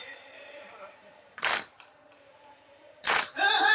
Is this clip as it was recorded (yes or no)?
no